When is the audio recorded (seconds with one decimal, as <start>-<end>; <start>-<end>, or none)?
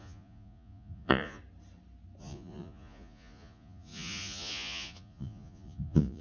1.4-2.2